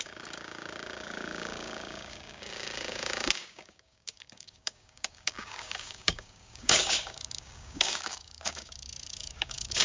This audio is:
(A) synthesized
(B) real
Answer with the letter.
A